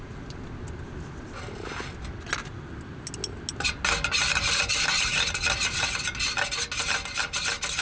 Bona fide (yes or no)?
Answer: yes